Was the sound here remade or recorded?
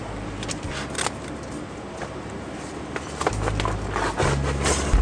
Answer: recorded